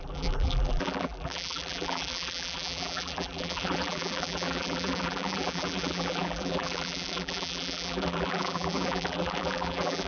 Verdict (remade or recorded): remade